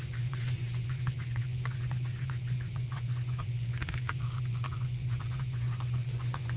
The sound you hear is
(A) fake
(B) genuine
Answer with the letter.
A